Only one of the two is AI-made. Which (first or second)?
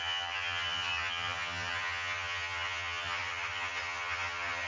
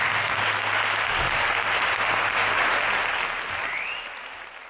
first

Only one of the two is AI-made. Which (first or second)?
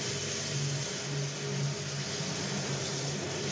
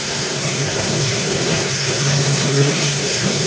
second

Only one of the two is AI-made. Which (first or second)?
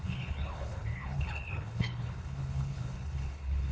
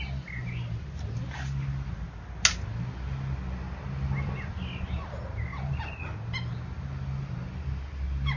first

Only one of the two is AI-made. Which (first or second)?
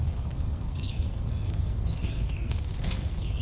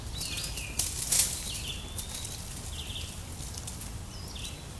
first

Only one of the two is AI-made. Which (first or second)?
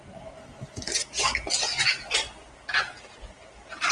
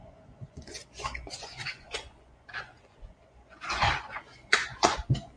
second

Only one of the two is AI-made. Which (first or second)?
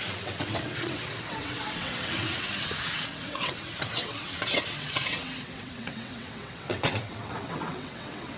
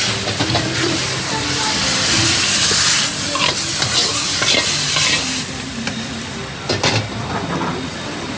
first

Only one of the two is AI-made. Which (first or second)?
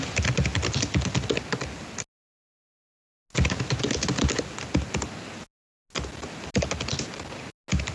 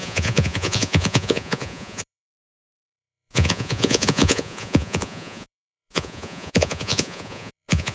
second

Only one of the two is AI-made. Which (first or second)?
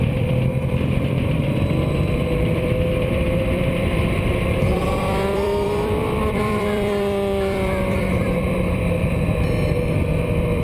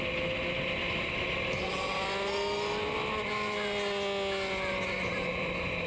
first